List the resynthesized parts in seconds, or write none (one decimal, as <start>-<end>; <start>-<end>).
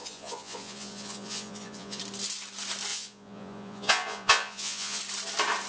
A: 0.0-2.0; 2.9-5.0